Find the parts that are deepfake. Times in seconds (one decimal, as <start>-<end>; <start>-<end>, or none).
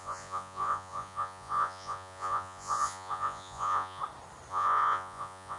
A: 0.0-4.0; 4.5-5.6